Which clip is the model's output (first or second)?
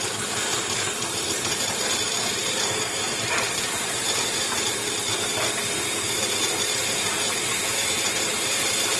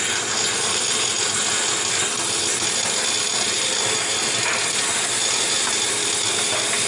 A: first